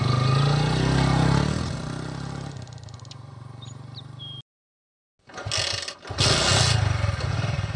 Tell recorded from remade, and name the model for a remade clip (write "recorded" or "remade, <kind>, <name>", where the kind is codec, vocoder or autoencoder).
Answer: recorded